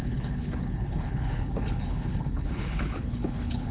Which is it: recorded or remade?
remade